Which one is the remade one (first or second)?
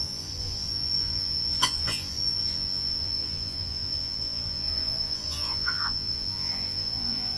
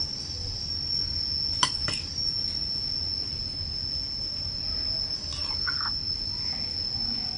first